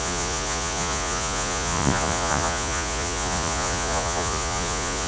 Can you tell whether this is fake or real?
fake